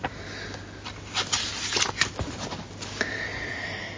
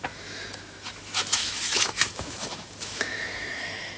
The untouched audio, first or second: first